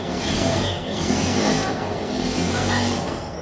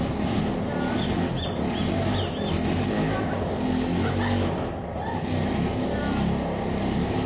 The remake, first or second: first